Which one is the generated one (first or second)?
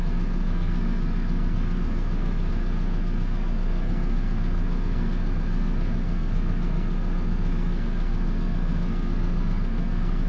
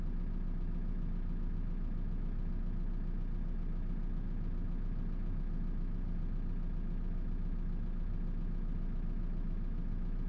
first